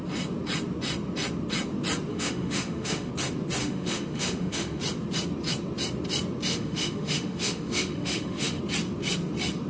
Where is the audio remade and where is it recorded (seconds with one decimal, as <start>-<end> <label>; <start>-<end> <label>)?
0.0-2.1 recorded; 2.1-3.1 remade; 3.1-3.6 recorded; 3.6-4.8 remade; 4.8-6.5 recorded; 6.5-8.6 remade; 8.6-9.7 recorded